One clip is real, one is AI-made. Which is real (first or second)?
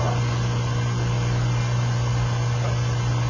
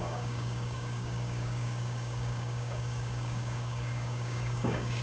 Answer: first